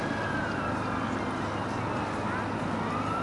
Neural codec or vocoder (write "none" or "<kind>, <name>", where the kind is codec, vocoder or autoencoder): none